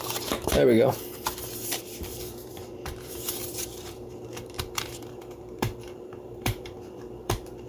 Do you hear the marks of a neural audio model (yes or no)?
yes